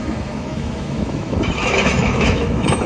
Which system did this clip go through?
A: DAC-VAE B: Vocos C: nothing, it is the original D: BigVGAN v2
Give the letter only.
A